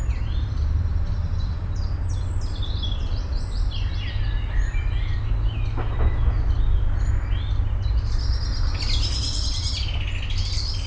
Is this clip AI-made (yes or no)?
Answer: no